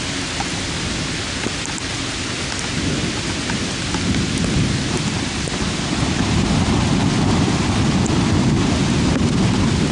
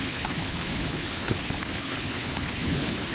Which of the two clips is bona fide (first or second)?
first